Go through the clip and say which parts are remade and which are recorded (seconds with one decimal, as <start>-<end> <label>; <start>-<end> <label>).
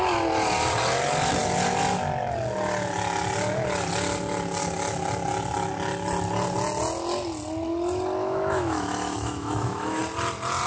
0.0-8.2 recorded; 8.2-10.0 remade; 10.0-10.7 recorded